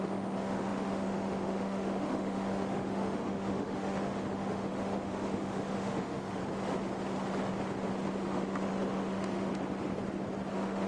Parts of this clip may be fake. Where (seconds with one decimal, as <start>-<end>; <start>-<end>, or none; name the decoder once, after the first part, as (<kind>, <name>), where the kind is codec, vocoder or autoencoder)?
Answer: 0.0-6.4 (autoencoder, DAC-VAE); 8.2-9.5; 10.5-10.9